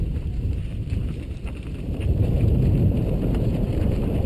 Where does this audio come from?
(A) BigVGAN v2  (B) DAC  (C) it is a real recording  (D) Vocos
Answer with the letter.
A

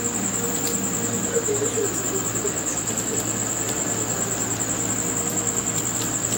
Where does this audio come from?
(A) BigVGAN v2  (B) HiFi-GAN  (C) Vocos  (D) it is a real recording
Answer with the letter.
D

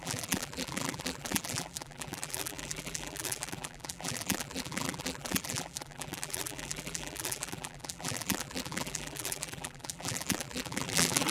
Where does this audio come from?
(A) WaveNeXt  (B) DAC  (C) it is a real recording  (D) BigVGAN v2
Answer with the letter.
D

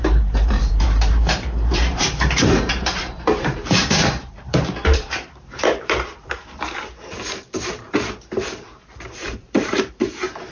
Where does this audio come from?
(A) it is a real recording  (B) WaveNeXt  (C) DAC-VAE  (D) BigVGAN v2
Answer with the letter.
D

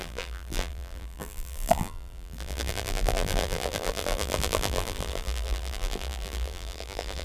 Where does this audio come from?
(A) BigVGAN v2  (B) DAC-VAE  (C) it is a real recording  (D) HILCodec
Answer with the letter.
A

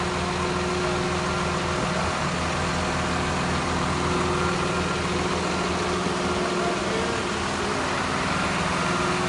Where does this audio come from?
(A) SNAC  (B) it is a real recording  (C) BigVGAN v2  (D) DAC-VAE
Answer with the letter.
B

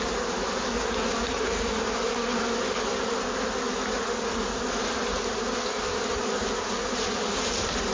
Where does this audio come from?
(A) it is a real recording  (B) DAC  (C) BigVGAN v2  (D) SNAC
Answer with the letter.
A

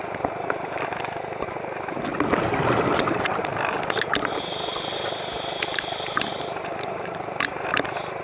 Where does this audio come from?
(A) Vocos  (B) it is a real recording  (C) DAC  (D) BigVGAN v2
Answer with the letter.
D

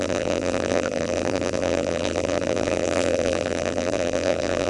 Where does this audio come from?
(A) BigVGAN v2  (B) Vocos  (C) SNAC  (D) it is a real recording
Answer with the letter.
A